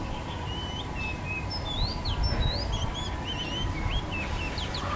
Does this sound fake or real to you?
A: real